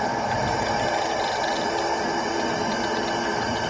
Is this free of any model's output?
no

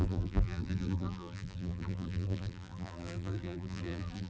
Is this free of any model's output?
no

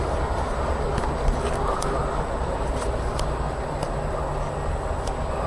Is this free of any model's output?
yes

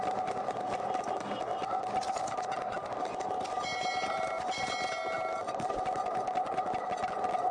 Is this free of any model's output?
yes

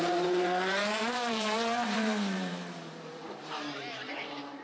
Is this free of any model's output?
no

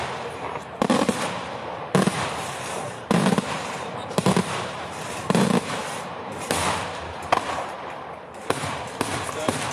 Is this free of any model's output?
no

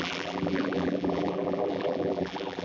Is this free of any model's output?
no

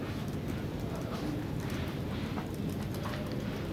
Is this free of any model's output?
no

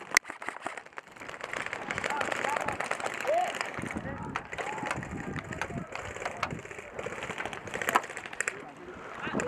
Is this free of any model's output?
yes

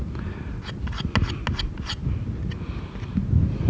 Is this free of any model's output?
yes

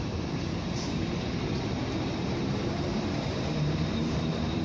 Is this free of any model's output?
no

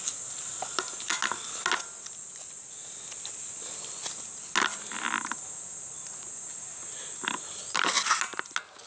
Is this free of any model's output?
yes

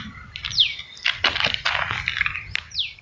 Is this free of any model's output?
yes